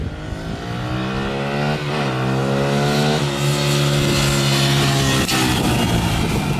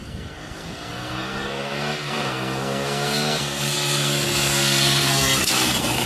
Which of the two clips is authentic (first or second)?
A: first